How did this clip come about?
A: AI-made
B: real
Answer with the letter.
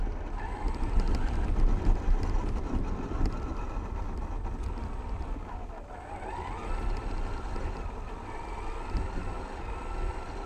B